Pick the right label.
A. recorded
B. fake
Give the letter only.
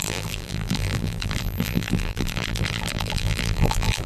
B